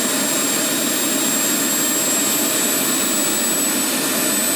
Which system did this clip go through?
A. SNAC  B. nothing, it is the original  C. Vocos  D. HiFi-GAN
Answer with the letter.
B